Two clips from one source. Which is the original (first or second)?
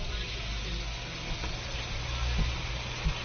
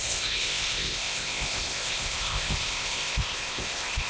first